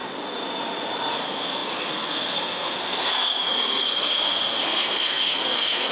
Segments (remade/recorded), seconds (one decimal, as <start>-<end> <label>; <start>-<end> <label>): 0.0-1.1 recorded; 1.1-5.9 remade